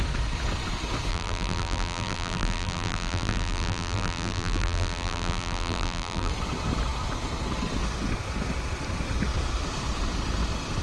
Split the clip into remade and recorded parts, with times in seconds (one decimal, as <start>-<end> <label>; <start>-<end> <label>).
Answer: 0.0-1.1 recorded; 1.1-6.3 remade; 6.3-10.8 recorded